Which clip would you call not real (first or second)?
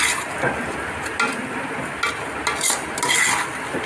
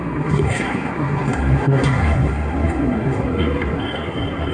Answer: second